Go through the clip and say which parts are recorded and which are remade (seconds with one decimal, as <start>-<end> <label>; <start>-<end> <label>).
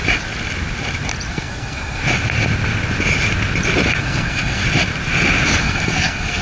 0.0-1.3 recorded; 1.3-2.0 remade; 2.0-4.0 recorded; 4.0-4.6 remade; 4.6-5.6 recorded; 5.6-6.4 remade